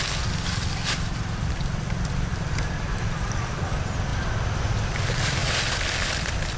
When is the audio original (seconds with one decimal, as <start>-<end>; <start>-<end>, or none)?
2.3-2.9; 4.1-4.7; 5.4-6.0